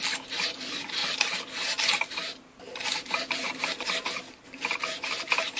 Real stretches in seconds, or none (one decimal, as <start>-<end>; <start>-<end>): 0.0-1.0; 4.4-5.6